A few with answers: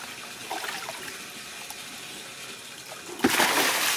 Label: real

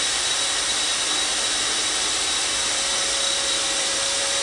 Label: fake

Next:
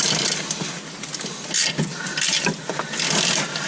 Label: real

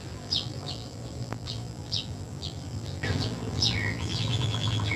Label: fake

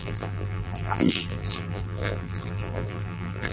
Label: fake